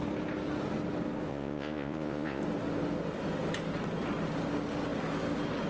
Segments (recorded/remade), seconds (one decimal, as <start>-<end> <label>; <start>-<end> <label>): 0.0-1.3 recorded; 1.3-2.4 remade; 2.4-5.7 recorded